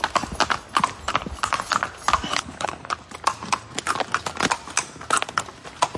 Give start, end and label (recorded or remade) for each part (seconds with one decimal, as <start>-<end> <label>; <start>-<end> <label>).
0.0-2.3 recorded; 2.3-2.9 remade; 2.9-6.0 recorded